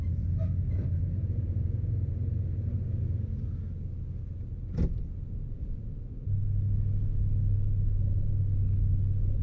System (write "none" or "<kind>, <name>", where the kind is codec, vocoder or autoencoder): none